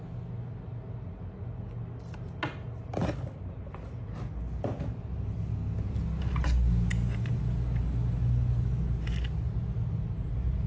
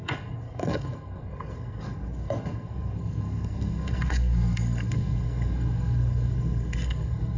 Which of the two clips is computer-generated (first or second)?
second